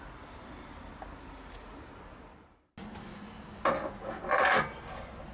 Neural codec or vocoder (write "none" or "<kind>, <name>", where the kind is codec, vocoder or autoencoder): none